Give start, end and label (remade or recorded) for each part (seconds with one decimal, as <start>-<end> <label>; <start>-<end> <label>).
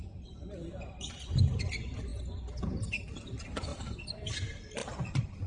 0.0-3.7 recorded; 3.7-4.3 remade; 4.3-4.8 recorded; 4.8-5.5 remade